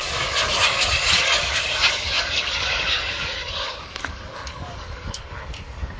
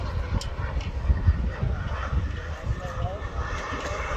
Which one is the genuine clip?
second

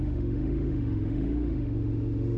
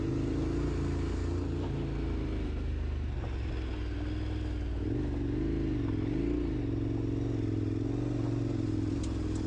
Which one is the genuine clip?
second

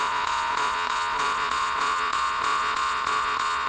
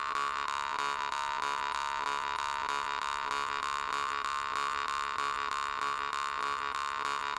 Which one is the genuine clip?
second